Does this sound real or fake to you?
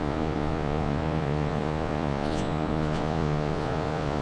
fake